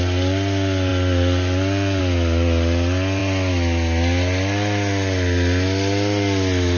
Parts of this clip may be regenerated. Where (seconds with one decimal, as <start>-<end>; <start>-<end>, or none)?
none